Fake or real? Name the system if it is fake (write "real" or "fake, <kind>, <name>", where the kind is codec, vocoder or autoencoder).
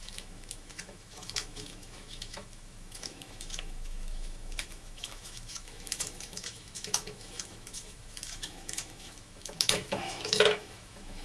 fake, autoencoder, DAC-VAE